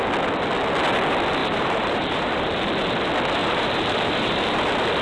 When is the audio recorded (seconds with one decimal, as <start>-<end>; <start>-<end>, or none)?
0.0-1.4; 2.4-3.4; 4.6-5.0